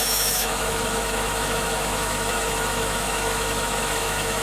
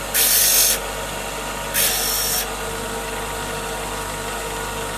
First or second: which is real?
second